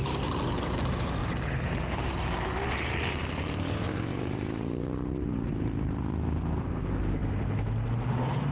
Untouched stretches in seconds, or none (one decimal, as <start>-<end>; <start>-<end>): 7.2-8.1